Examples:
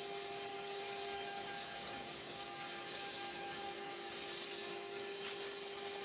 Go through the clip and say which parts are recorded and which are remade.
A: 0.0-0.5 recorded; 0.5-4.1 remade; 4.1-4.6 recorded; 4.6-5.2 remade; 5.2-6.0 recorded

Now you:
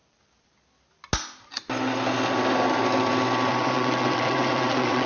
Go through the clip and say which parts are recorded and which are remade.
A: 0.0-3.5 recorded; 3.5-5.1 remade

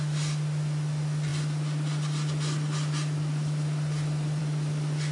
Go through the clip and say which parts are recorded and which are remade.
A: 0.0-5.1 recorded

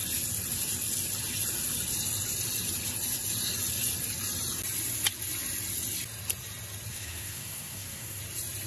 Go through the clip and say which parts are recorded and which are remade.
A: 0.0-6.9 recorded; 6.9-8.2 remade; 8.2-8.7 recorded

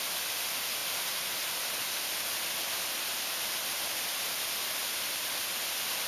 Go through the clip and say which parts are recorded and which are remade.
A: 0.0-0.8 recorded; 0.8-1.7 remade; 1.7-4.8 recorded; 4.8-5.3 remade; 5.3-6.1 recorded

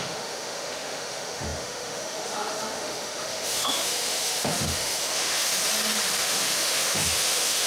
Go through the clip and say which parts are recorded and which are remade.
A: 0.0-5.5 remade; 5.5-6.2 recorded; 6.2-7.7 remade

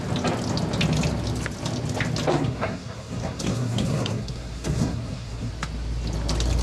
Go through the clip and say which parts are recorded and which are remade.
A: 0.0-2.3 recorded; 2.3-5.5 remade; 5.5-6.6 recorded

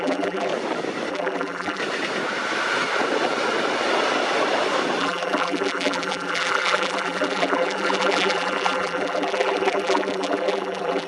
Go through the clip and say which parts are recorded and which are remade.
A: 0.0-0.5 remade; 0.5-1.1 recorded; 1.1-1.8 remade; 1.8-5.0 recorded; 5.0-11.1 remade